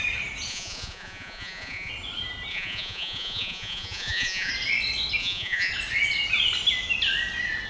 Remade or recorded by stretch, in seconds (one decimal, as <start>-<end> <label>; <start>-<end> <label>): 0.0-0.5 recorded; 0.5-1.9 remade; 1.9-2.5 recorded; 2.5-4.5 remade; 4.5-5.2 recorded; 5.2-5.7 remade; 5.7-7.7 recorded

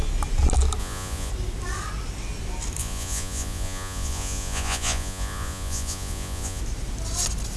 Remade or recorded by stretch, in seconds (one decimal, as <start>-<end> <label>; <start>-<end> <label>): 0.0-0.8 recorded; 0.8-1.3 remade; 1.3-2.8 recorded; 2.8-6.6 remade; 6.6-7.6 recorded

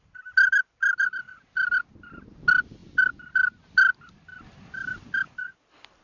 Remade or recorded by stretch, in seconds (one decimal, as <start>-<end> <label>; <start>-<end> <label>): 0.0-6.0 recorded

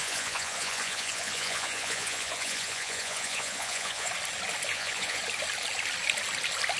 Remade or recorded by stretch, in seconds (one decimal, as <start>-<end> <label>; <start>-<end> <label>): 0.0-4.1 remade; 4.1-4.7 recorded; 4.7-5.2 remade; 5.2-6.8 recorded

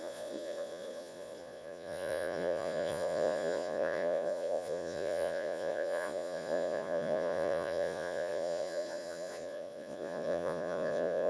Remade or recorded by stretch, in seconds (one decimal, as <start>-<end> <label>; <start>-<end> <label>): 0.0-11.3 remade

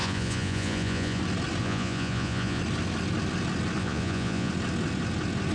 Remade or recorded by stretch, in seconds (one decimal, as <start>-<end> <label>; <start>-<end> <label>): 0.0-1.2 remade; 1.2-1.6 recorded; 1.6-2.6 remade; 2.6-3.8 recorded; 3.8-4.5 remade; 4.5-5.5 recorded